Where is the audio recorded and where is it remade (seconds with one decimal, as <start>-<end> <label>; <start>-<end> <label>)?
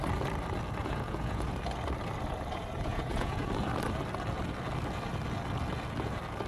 0.0-0.8 recorded; 0.8-1.6 remade; 1.6-2.9 recorded; 2.9-3.5 remade; 3.5-6.5 recorded